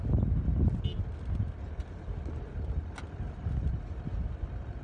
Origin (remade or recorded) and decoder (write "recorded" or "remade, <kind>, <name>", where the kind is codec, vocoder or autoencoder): recorded